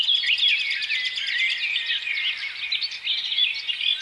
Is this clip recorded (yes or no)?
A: yes